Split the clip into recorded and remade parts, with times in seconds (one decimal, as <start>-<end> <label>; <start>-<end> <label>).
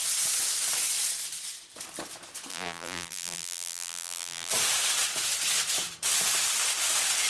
0.0-2.5 recorded; 2.5-4.5 remade; 4.5-7.3 recorded